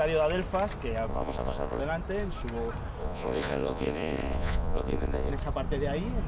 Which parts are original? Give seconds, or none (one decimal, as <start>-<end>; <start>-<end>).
0.0-1.1; 1.8-3.0; 5.3-6.3

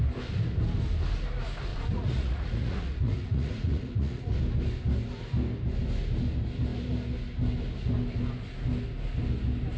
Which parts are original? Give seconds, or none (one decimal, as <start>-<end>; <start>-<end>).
0.0-1.7; 4.4-9.8